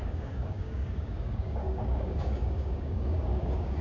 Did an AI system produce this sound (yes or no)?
yes